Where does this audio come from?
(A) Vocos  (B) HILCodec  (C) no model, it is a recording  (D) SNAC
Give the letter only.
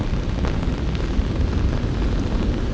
C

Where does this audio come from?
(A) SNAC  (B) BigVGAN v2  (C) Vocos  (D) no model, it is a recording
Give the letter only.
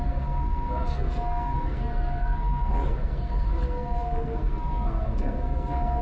A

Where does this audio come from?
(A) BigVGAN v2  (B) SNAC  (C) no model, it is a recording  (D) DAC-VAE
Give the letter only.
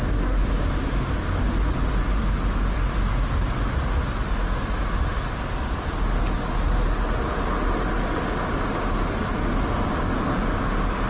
C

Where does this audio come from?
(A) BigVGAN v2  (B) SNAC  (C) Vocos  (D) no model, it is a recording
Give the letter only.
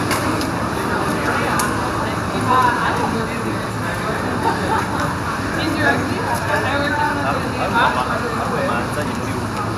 D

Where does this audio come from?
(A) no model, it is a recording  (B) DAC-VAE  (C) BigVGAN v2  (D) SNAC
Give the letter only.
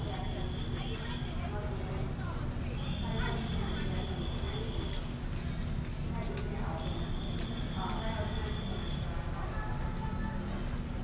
A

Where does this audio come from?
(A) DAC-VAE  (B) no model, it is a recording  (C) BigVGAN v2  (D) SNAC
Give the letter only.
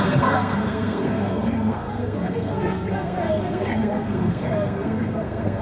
D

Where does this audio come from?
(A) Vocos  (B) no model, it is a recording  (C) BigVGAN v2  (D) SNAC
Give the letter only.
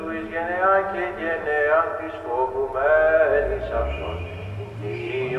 B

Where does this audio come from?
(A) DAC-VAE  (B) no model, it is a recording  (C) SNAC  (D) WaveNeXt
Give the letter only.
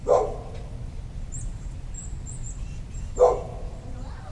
B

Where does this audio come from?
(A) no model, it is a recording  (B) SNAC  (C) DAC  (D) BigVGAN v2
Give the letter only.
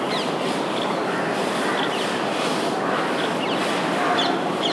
A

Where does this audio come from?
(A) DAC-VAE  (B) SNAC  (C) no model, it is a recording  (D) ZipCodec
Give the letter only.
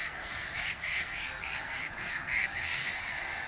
B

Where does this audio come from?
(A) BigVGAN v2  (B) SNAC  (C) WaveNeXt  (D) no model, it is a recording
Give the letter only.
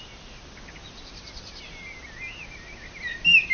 D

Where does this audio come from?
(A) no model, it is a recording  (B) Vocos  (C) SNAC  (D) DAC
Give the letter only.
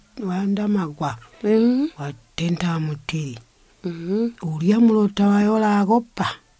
A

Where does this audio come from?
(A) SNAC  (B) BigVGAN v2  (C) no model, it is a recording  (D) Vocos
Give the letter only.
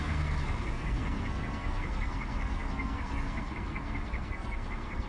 A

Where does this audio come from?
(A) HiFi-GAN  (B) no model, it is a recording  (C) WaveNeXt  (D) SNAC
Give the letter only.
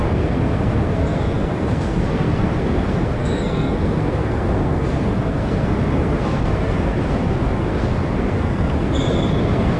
D